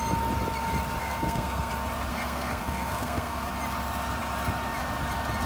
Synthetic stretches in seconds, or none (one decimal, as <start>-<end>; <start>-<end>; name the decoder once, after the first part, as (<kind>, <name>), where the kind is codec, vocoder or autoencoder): 1.0-1.7 (codec, SNAC); 2.1-3.5